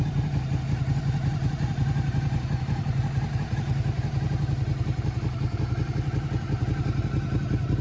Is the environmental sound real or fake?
real